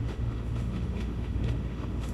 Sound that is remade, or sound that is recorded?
remade